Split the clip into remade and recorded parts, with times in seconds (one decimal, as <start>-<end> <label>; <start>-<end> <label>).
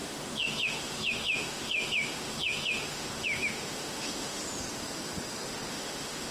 0.0-4.4 remade; 4.4-5.7 recorded; 5.7-6.3 remade